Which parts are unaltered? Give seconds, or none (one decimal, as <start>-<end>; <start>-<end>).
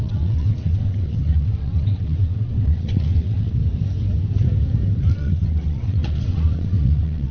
3.6-5.1